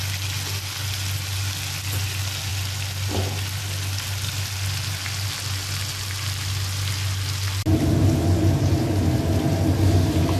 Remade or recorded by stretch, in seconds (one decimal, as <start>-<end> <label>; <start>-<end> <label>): 0.0-10.4 recorded